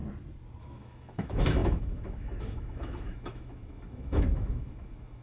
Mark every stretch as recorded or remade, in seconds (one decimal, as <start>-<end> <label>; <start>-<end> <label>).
0.0-0.6 recorded; 0.6-5.2 remade